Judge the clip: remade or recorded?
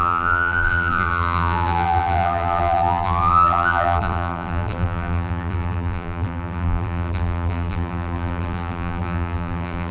remade